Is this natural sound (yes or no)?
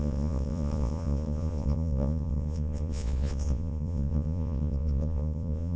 no